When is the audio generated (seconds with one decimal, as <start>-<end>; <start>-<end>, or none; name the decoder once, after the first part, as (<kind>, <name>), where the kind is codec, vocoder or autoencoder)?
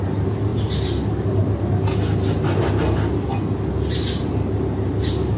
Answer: none